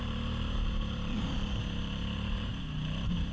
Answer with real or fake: fake